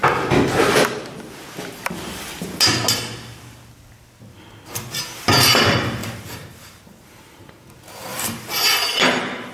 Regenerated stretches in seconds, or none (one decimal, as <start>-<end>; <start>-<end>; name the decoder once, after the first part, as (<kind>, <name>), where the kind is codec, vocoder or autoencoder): 6.0-7.6 (vocoder, BigVGAN v2); 8.1-9.5